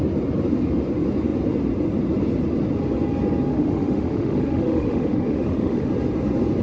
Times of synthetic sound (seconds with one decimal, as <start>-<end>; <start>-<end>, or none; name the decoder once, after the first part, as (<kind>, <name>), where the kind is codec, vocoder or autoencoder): 3.5-5.9 (autoencoder, DAC-VAE)